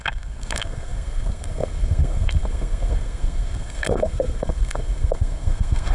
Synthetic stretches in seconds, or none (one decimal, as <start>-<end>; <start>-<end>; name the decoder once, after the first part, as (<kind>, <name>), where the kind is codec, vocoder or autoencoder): 0.0-5.9 (codec, SNAC)